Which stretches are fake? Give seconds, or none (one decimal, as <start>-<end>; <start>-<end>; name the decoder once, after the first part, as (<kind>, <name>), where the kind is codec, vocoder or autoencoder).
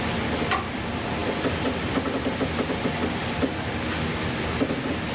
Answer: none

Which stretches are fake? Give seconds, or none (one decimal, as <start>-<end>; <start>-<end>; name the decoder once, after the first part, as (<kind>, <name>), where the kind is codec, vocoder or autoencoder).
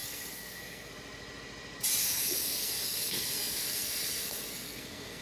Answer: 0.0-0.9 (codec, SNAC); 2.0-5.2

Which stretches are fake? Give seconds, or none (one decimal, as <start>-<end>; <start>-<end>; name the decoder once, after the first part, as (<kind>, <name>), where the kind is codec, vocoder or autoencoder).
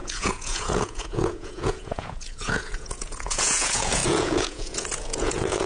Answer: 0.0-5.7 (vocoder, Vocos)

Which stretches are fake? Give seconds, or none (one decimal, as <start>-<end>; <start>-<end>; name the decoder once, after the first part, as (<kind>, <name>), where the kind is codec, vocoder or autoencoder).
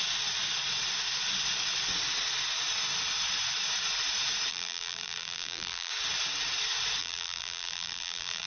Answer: 4.5-5.9 (vocoder, BigVGAN v2); 7.0-8.5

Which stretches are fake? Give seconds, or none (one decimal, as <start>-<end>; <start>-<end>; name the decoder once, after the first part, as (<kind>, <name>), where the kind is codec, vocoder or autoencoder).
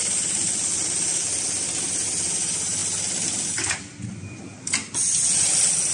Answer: none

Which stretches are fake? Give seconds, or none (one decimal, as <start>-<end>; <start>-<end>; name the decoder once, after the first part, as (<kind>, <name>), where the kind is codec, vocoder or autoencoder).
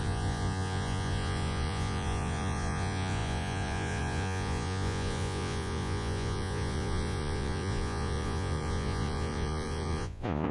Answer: 0.0-10.5 (vocoder, Vocos)